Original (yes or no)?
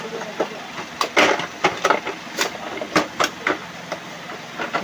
yes